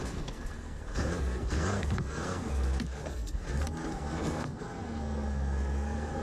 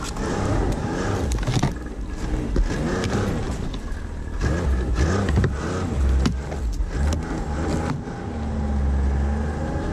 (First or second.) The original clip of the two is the second